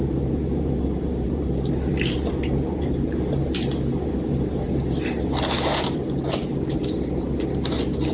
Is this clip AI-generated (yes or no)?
yes